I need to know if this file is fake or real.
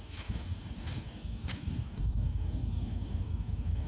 fake